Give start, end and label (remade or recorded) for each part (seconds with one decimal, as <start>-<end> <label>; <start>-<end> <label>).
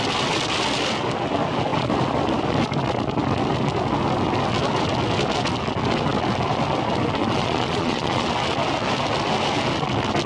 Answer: 0.0-7.2 recorded; 7.2-8.3 remade; 8.3-10.3 recorded